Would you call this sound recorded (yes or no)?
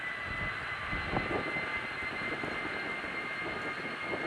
yes